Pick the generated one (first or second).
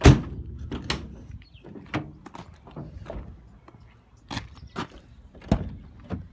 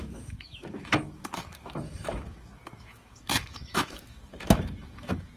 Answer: second